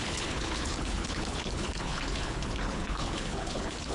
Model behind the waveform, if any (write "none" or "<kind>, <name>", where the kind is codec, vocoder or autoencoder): codec, HILCodec